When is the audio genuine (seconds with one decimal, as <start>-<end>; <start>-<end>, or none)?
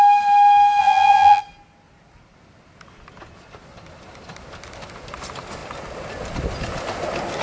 0.0-0.8; 1.4-7.4